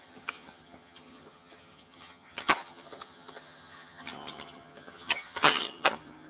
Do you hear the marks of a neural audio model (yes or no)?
yes